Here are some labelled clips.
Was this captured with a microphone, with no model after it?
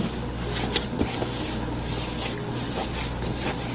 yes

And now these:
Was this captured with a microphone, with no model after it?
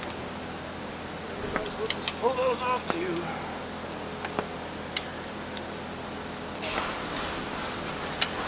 yes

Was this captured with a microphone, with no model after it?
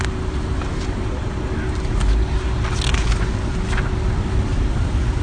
yes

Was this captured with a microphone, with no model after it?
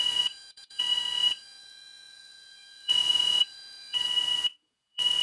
no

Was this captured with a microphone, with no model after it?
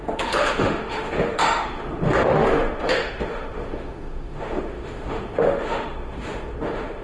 no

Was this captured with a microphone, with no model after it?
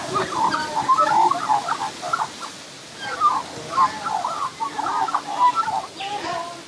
yes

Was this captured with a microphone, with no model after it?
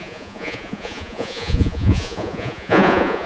no